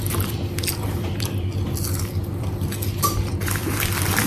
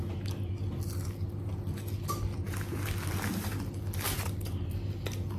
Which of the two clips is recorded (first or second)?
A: second